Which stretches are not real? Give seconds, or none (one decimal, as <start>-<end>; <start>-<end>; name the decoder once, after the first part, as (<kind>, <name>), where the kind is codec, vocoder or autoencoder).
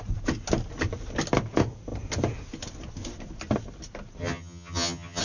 4.2-5.2 (vocoder, HiFi-GAN)